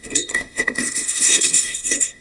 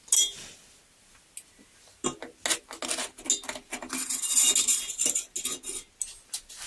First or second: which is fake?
first